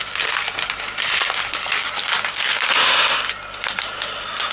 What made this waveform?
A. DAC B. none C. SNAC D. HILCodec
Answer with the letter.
B